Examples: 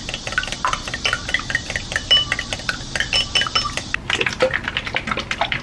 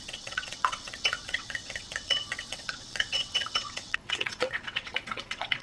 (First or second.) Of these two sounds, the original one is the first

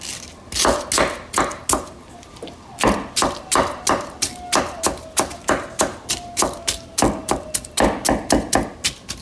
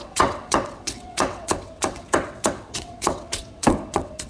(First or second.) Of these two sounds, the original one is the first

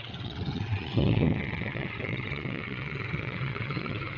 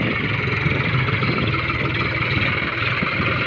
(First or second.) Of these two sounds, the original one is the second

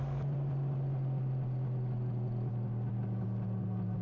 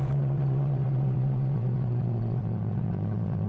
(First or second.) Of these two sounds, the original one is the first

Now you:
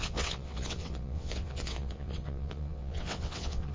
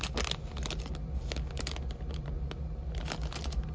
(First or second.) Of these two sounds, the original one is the second